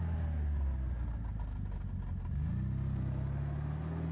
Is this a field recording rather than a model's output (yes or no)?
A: yes